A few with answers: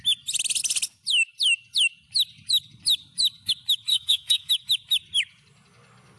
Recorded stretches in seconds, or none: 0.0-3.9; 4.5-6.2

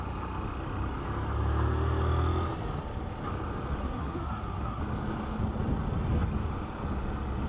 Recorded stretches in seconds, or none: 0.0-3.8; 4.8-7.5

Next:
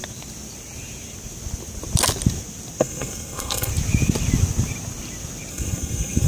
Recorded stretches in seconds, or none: 0.0-2.8; 3.7-5.5

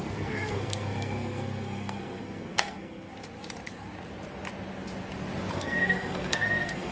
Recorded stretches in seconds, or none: 3.1-5.5

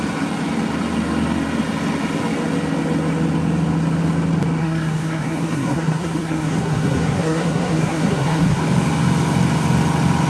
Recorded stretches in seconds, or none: 0.0-4.6; 8.6-10.3

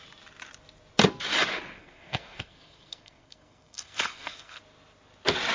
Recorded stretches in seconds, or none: 0.0-1.8; 4.6-5.5

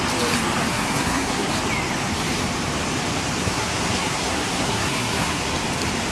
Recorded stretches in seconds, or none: 0.0-0.7; 1.5-3.4; 5.5-6.1

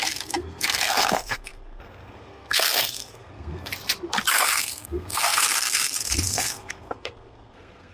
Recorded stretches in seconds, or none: 3.7-4.3